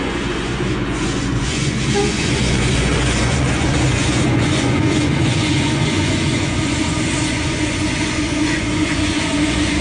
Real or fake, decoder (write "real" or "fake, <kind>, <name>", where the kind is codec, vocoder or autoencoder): fake, vocoder, Vocos